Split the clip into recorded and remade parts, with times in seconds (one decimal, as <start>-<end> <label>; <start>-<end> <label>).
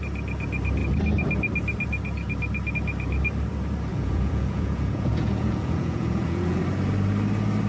0.0-3.9 recorded; 3.9-6.6 remade; 6.6-7.7 recorded